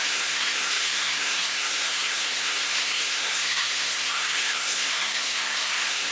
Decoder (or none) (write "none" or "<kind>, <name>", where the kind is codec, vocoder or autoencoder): codec, SNAC